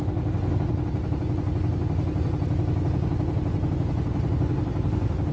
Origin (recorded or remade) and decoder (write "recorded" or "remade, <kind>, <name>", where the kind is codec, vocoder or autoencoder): recorded